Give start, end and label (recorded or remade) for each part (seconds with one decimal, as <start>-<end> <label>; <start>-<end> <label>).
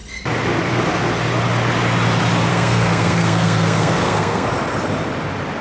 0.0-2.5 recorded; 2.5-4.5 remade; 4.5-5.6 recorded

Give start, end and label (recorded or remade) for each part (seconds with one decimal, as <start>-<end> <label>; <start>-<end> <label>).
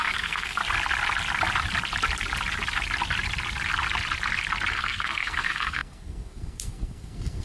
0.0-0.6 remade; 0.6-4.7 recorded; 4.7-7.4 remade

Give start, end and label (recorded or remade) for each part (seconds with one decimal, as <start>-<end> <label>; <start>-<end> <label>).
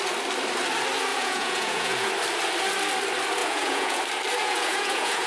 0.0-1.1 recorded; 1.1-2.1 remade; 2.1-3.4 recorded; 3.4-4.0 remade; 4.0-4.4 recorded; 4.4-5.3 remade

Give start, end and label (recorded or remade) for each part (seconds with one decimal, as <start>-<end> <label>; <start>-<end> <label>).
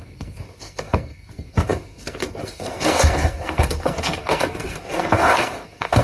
0.0-6.0 remade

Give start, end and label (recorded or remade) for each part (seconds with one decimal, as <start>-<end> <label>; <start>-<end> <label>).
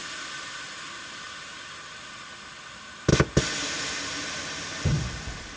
0.0-5.6 recorded